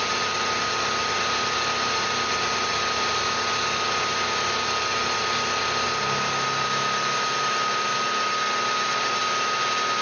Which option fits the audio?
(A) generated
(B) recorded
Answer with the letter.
B